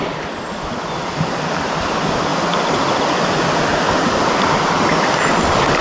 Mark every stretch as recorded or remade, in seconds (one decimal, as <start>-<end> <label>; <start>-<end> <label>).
0.0-3.7 recorded; 3.7-5.8 remade